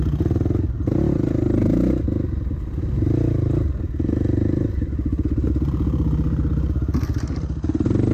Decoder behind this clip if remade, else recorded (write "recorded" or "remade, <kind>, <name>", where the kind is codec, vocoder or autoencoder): recorded